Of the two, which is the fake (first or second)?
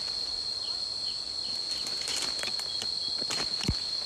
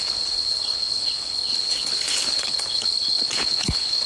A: second